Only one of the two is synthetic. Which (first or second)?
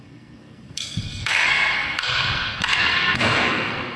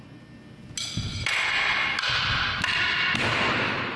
first